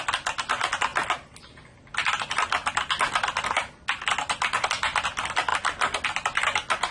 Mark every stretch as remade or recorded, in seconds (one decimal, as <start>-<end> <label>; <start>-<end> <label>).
0.0-6.9 recorded